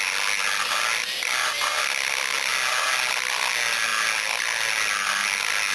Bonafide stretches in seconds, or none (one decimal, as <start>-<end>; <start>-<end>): 0.0-5.7